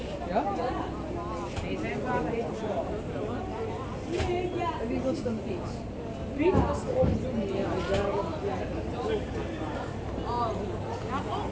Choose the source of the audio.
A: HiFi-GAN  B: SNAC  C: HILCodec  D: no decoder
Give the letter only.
D